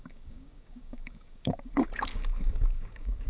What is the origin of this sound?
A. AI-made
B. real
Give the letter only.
A